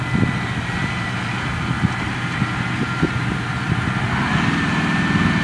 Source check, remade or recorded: recorded